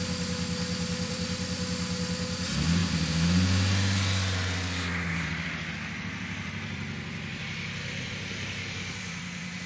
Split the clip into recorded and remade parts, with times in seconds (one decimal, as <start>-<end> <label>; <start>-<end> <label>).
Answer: 0.0-2.8 remade; 2.8-5.1 recorded; 5.1-9.7 remade